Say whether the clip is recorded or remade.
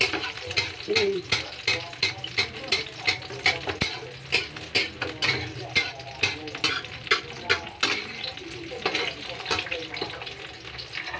recorded